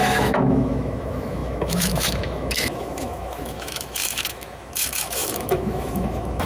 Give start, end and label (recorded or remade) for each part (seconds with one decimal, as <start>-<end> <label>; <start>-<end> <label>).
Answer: 0.0-6.5 remade